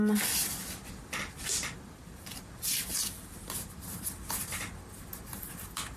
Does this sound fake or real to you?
fake